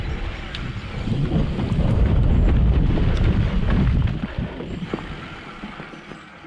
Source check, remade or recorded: remade